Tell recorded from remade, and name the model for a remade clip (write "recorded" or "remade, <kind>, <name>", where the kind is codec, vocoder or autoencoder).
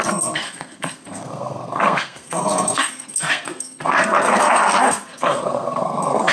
remade, codec, SNAC